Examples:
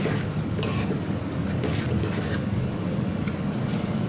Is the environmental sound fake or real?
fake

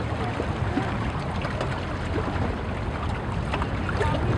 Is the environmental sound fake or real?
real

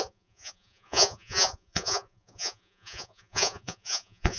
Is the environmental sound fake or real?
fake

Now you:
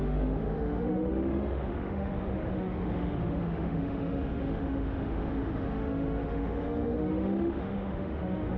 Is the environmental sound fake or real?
fake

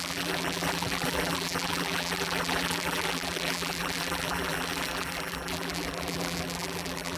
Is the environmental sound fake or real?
fake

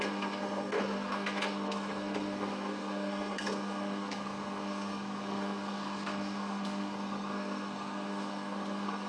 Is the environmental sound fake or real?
fake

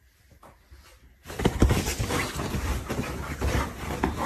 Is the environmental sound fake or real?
real